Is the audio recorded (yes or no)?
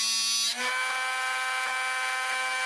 yes